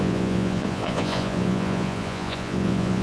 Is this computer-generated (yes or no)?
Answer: yes